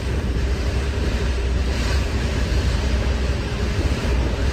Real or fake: fake